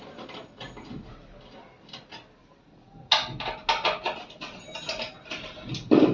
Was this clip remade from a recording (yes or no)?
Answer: no